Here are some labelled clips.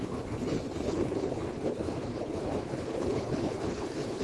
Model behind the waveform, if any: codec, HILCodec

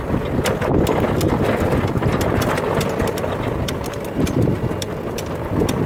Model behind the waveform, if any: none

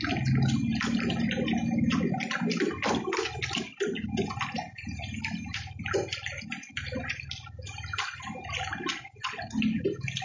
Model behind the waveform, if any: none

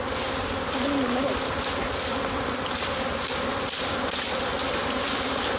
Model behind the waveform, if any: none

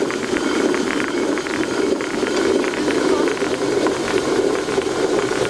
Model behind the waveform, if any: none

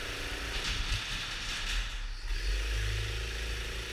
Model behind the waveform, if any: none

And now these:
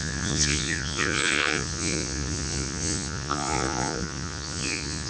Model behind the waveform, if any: vocoder, Vocos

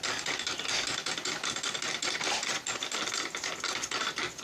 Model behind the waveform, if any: none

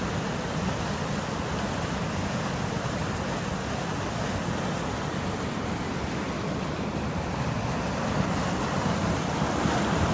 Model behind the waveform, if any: none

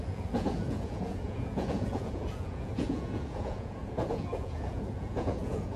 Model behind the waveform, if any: vocoder, Vocos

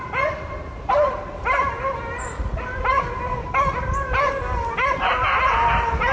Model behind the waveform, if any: none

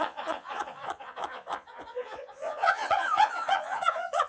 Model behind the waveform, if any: vocoder, Vocos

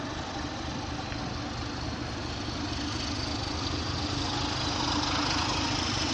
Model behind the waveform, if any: none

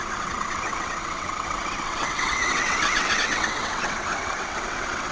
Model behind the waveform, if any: vocoder, WaveNeXt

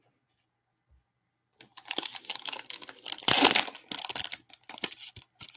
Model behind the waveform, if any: none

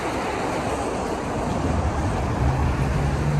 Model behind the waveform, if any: none